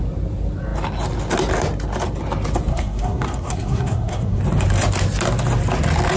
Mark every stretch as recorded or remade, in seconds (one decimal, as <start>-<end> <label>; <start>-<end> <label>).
0.0-2.7 recorded; 2.7-4.4 remade; 4.4-6.2 recorded